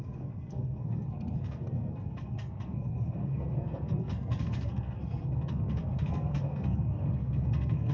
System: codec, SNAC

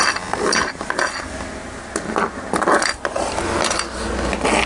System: none